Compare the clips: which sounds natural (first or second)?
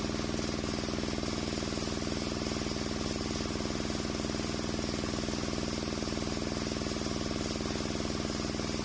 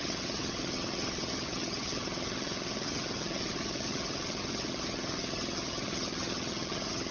first